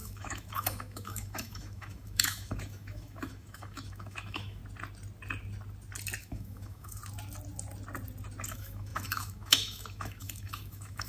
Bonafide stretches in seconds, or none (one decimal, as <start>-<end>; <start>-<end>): 4.6-6.2; 7.0-8.5